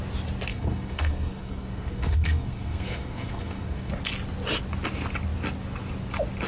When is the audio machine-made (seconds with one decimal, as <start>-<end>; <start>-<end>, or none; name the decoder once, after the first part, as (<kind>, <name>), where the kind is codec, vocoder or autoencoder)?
0.5-3.9 (codec, SNAC)